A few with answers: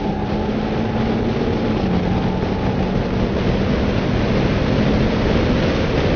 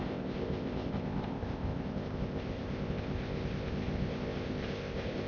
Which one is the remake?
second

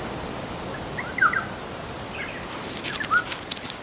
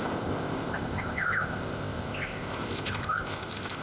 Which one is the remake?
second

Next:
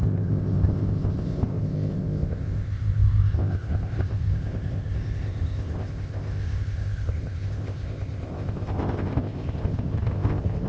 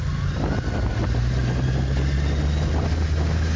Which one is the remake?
first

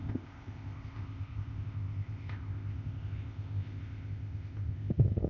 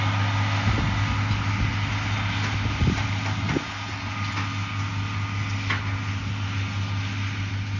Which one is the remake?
first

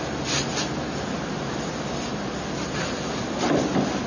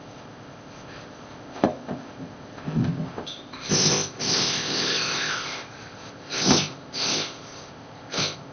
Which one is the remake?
second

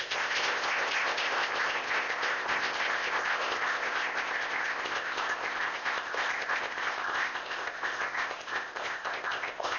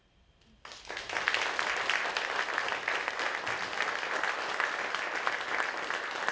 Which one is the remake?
first